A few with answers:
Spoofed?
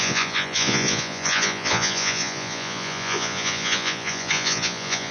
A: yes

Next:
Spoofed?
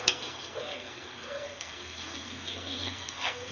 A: yes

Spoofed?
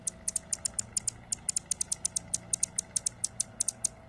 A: no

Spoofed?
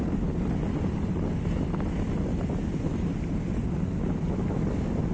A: no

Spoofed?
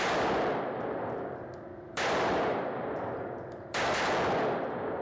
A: yes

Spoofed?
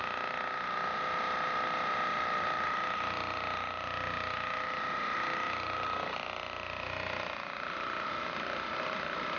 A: no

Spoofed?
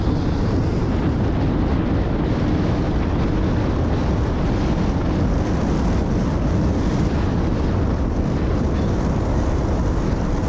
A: no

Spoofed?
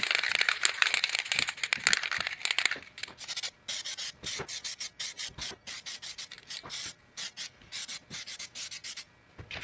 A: no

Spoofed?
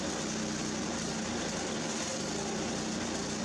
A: no